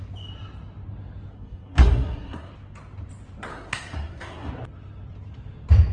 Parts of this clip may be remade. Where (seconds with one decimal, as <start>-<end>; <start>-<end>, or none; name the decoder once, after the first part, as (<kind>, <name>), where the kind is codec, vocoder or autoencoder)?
1.3-2.5 (codec, SNAC); 3.5-4.5